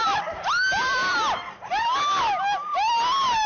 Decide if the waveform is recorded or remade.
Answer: recorded